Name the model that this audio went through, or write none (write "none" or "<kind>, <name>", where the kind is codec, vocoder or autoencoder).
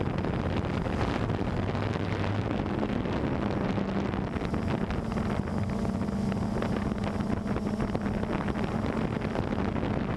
none